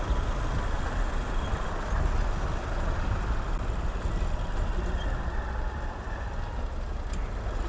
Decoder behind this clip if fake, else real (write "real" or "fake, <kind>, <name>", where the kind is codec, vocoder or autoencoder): real